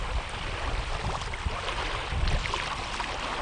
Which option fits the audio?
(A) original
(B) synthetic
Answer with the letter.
A